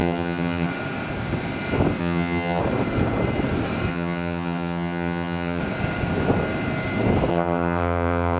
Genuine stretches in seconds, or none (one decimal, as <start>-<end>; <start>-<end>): 0.7-2.0; 2.6-3.9; 5.6-7.3